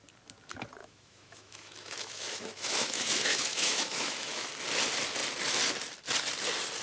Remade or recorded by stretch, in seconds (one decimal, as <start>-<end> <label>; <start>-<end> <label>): 0.0-0.8 recorded; 0.8-4.5 remade; 4.5-6.8 recorded